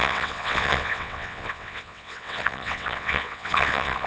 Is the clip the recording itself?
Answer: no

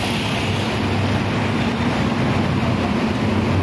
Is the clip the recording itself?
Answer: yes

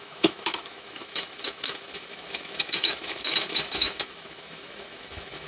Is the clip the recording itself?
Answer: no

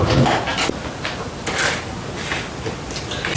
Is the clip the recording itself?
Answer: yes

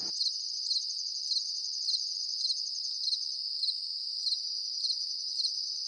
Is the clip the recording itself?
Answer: yes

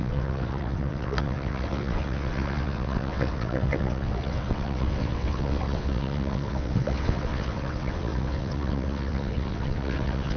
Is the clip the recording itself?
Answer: no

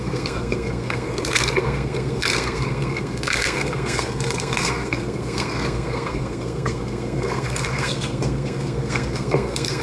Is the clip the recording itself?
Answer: no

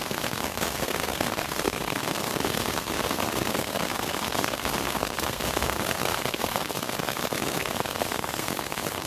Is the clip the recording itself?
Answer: no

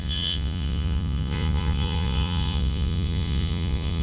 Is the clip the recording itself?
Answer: no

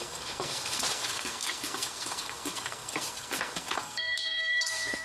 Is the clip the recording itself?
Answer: no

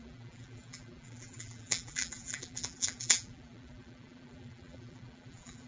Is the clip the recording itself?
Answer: no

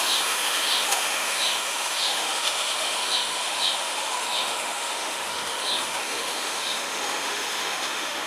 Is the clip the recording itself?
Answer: no